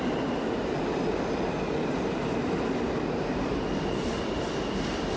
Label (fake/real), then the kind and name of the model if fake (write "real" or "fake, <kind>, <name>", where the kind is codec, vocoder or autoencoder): real